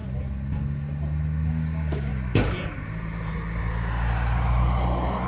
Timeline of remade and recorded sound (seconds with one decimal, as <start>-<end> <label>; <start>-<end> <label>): 0.0-1.5 recorded; 1.5-2.1 remade; 2.1-5.3 recorded